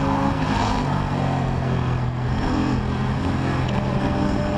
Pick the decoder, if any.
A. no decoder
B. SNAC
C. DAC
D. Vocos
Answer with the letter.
B